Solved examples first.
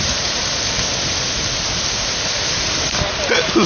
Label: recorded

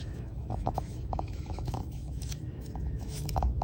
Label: remade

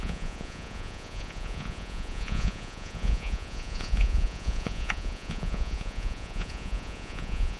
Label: remade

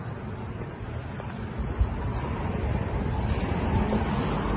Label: recorded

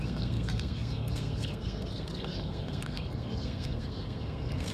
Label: remade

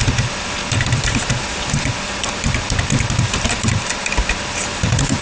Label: remade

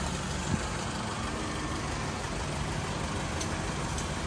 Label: recorded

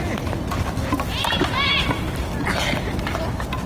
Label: recorded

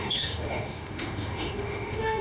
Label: remade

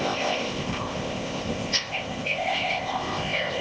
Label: remade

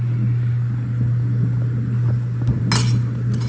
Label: recorded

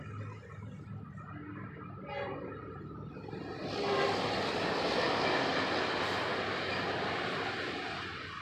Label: recorded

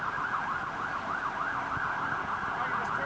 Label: recorded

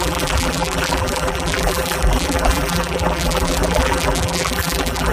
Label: remade